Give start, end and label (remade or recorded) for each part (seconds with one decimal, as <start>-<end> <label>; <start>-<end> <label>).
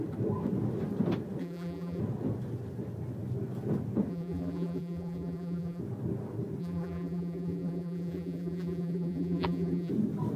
0.0-1.4 recorded; 1.4-2.0 remade; 2.0-4.1 recorded; 4.1-5.8 remade; 5.8-6.6 recorded; 6.6-9.9 remade; 9.9-10.4 recorded